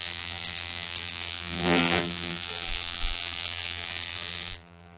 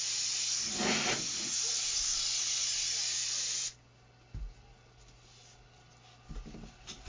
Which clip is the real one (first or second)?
second